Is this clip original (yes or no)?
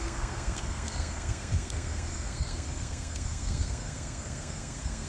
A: no